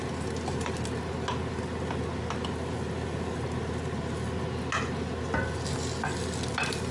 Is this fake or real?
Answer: real